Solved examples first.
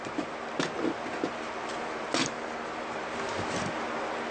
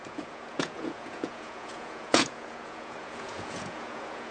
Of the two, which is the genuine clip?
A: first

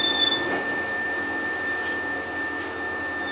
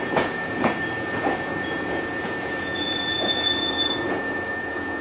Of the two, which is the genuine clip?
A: first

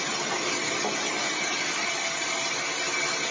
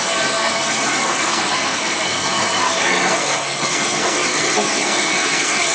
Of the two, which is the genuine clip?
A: first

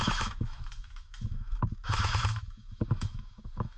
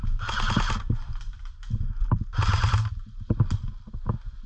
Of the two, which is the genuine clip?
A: second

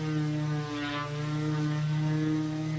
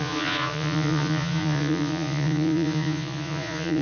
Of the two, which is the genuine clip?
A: first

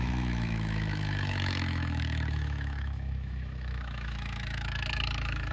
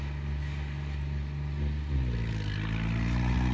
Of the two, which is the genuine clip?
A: second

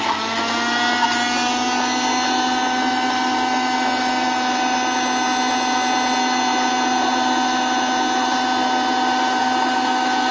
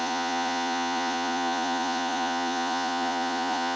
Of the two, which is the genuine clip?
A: first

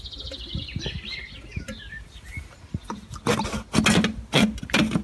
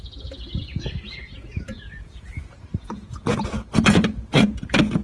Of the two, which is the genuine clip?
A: first